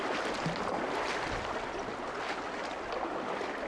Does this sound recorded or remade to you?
recorded